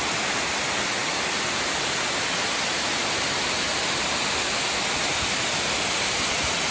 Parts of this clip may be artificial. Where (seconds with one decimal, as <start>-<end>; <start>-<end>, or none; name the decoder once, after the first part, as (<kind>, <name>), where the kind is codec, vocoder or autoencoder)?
none